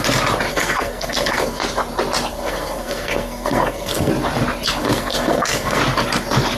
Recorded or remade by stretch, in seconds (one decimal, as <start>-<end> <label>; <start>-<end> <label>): 0.0-0.5 recorded; 0.5-1.6 remade; 1.6-2.3 recorded; 2.3-4.1 remade; 4.1-4.8 recorded; 4.8-5.8 remade; 5.8-6.6 recorded

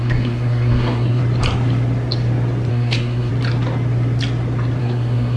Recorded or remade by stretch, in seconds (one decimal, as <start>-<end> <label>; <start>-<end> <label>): 0.0-1.2 remade; 1.2-2.7 recorded; 2.7-3.3 remade; 3.3-4.8 recorded; 4.8-5.4 remade